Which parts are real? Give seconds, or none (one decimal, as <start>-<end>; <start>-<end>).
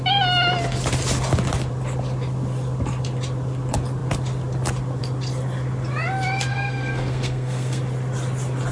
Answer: 0.0-6.5; 7.8-8.7